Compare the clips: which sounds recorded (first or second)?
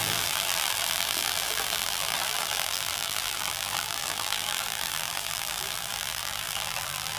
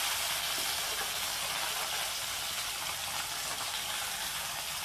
second